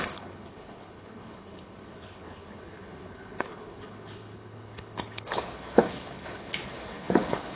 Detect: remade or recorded remade